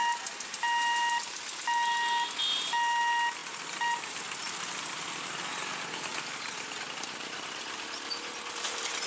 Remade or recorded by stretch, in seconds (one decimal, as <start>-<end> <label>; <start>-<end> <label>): 0.0-9.1 recorded